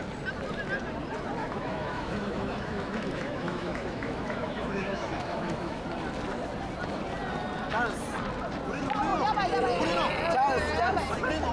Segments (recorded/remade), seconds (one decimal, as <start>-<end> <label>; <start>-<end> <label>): 0.0-1.4 recorded; 1.4-5.8 remade; 5.8-11.5 recorded